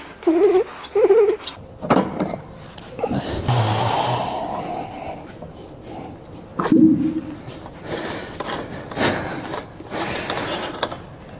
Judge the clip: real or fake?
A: real